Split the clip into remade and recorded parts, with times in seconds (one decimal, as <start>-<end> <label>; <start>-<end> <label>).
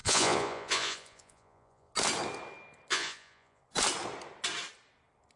0.0-1.9 remade; 1.9-2.9 recorded; 2.9-3.6 remade; 3.6-5.4 recorded